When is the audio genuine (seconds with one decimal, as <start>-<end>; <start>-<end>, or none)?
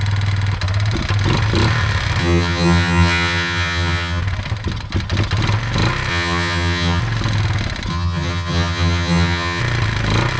0.0-2.2; 4.2-6.1; 7.0-7.9; 9.6-10.4